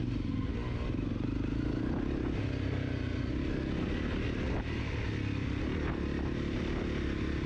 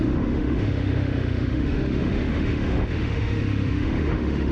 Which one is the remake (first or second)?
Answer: second